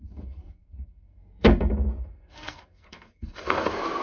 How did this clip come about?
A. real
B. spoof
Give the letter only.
B